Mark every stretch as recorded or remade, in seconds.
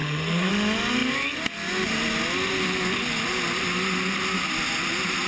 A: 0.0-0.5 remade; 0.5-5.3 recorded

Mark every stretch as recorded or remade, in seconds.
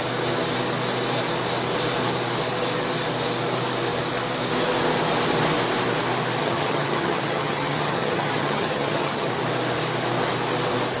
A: 0.0-6.4 recorded; 6.4-9.3 remade; 9.3-11.0 recorded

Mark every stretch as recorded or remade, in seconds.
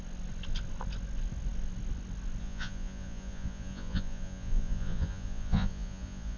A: 0.0-2.4 recorded; 2.4-6.4 remade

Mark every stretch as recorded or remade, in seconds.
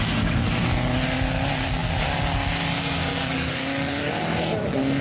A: 0.0-3.1 recorded; 3.1-4.1 remade; 4.1-5.0 recorded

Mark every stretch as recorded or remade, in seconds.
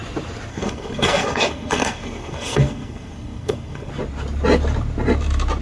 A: 0.0-0.5 recorded; 0.5-3.9 remade; 3.9-5.6 recorded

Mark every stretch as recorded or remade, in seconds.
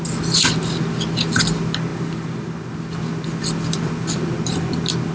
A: 0.0-5.1 recorded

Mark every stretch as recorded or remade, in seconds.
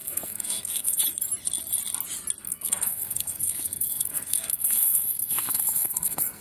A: 0.0-1.0 remade; 1.0-2.4 recorded; 2.4-6.4 remade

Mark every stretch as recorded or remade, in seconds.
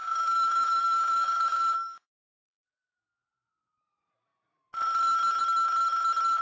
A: 0.0-3.8 remade; 3.8-6.4 recorded